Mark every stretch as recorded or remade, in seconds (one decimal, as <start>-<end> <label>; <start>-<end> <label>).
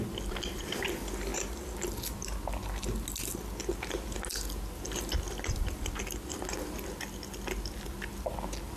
0.0-8.8 recorded